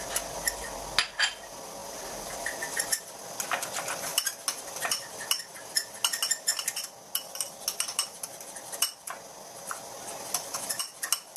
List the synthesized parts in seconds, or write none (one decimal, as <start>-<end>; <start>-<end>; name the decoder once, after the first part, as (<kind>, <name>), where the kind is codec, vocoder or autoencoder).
none